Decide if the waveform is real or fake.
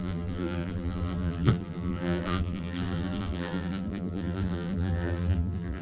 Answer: fake